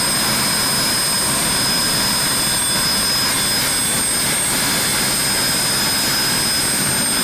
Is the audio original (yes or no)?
yes